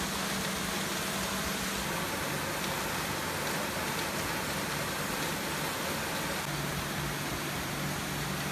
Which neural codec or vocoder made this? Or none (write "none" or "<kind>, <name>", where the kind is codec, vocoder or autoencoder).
none